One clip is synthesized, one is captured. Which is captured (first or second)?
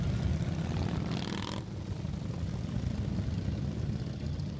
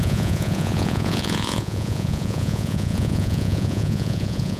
first